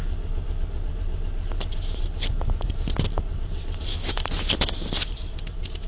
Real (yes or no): no